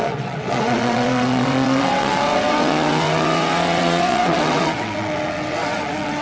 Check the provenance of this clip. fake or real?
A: fake